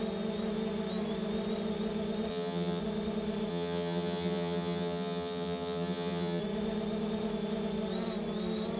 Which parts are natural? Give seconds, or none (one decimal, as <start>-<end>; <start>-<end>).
0.0-2.3; 2.8-3.5; 6.4-8.8